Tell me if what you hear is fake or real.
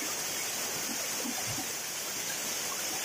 real